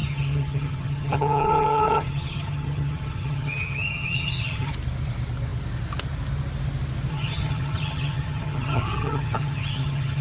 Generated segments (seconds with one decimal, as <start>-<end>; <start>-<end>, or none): 0.0-4.7; 7.1-10.2